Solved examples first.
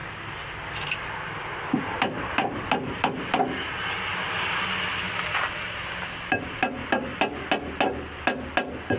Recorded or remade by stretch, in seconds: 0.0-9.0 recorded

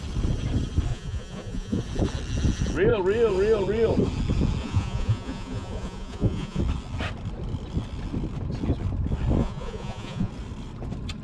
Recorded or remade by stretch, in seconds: 0.0-0.9 recorded; 0.9-1.8 remade; 1.8-4.6 recorded; 4.6-6.6 remade; 6.6-9.4 recorded; 9.4-10.3 remade; 10.3-11.2 recorded